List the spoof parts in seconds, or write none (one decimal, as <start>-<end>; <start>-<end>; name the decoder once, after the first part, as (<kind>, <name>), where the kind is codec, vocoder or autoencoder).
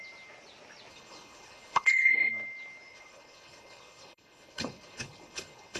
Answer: 0.9-2.3 (codec, HILCodec); 2.9-5.8